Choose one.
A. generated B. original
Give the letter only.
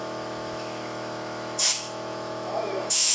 A